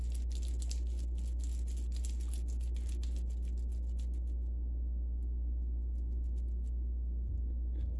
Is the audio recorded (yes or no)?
yes